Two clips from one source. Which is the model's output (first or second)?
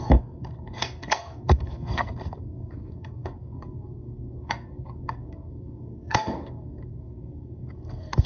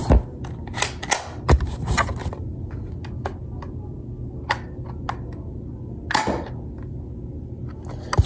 first